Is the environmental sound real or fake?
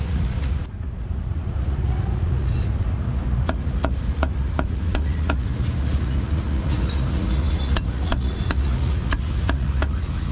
fake